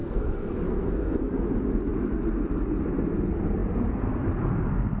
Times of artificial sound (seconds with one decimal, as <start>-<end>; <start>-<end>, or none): 0.0-1.2